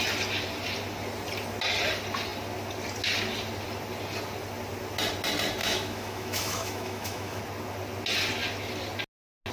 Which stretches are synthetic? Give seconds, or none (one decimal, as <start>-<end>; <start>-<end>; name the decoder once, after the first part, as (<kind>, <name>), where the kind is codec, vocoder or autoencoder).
5.6-7.4 (autoencoder, DAC-VAE)